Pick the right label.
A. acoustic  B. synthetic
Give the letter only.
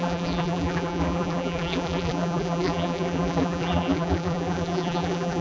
B